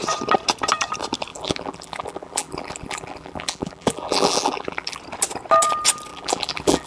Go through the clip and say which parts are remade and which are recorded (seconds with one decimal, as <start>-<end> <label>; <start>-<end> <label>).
0.0-1.3 recorded; 1.3-5.0 remade; 5.0-6.1 recorded; 6.1-6.9 remade